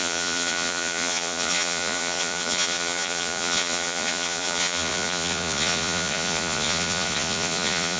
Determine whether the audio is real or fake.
fake